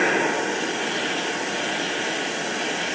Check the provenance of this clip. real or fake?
real